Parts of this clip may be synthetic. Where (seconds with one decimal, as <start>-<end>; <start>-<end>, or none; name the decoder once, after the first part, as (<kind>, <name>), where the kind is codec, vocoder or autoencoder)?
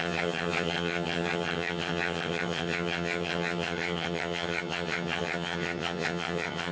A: 0.0-6.7 (vocoder, HiFi-GAN)